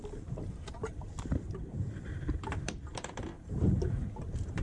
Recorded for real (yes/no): no